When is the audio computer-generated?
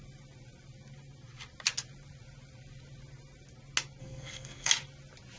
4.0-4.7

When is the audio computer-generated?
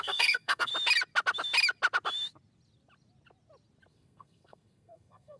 0.0-0.7; 3.9-5.4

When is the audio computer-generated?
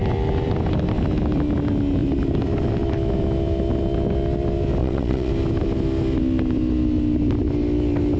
4.8-5.3